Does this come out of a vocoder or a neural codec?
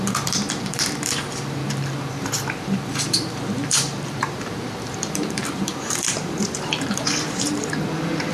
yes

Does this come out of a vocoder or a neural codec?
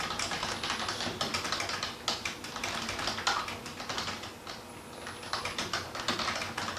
no